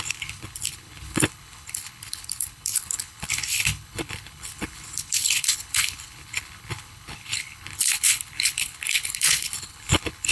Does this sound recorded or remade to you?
remade